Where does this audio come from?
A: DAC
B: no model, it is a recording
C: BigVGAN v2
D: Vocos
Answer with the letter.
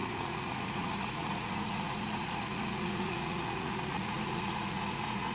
D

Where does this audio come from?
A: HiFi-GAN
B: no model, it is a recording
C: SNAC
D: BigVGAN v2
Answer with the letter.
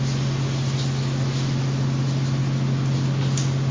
B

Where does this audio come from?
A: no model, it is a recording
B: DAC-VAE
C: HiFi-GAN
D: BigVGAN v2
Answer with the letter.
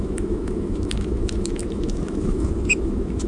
B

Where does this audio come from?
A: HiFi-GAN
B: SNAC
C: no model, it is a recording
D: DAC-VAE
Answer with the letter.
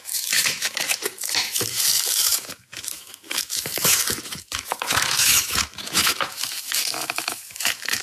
D